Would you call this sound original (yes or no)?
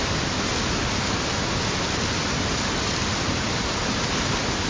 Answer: yes